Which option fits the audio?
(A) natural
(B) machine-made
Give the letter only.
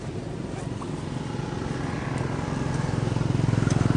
A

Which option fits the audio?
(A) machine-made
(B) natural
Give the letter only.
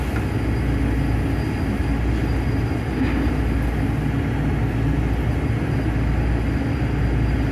B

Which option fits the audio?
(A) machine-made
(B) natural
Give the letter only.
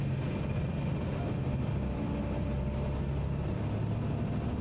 B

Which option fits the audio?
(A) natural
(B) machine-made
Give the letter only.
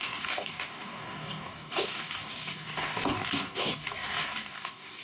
B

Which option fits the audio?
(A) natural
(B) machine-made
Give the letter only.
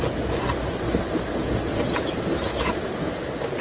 A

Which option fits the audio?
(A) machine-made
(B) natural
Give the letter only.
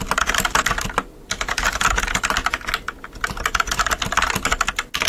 B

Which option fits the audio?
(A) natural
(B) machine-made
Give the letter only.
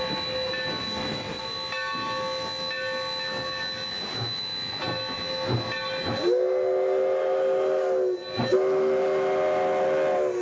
A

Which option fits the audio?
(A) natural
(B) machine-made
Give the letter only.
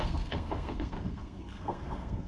B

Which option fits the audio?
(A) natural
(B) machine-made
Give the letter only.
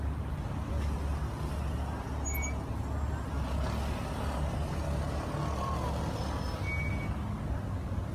A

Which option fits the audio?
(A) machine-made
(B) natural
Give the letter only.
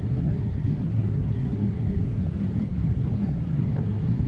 A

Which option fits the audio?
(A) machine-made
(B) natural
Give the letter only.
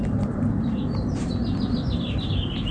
B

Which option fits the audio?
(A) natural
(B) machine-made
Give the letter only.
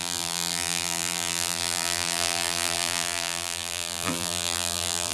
B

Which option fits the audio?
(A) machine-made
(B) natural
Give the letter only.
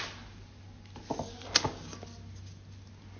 B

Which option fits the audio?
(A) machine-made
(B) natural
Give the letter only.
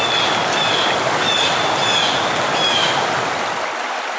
B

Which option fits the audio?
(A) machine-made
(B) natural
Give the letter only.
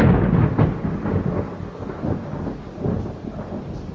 B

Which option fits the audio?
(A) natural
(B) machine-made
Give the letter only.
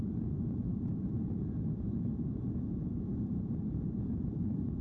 B